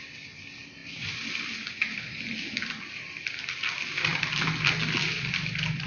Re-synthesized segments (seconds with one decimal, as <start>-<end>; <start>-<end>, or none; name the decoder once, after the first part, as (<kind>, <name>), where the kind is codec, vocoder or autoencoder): none